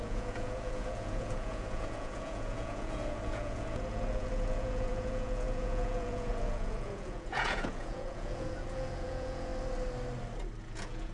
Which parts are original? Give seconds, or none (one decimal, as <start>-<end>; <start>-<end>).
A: 9.5-10.6